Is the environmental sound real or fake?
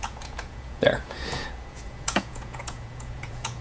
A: fake